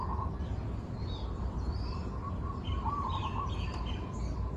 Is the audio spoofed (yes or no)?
no